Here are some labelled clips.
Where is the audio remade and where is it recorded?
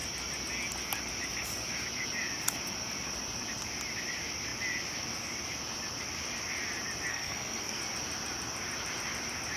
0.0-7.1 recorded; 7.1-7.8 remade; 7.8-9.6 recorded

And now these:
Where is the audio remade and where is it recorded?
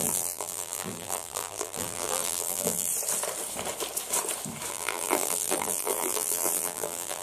0.0-2.9 remade; 2.9-4.7 recorded; 4.7-7.2 remade